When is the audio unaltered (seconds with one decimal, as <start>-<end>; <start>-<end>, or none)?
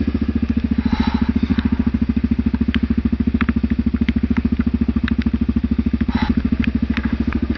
0.0-7.6